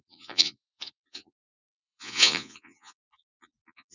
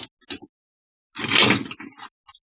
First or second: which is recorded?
second